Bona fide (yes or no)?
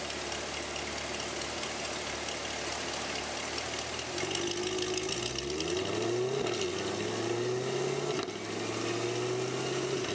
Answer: yes